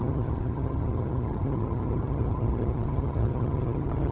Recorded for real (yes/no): no